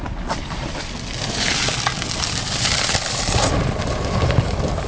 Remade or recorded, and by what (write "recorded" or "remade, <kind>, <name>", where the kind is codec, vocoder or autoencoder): remade, vocoder, BigVGAN v2